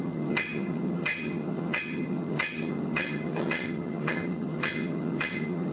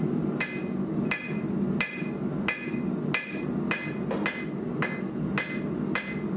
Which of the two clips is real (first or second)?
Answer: second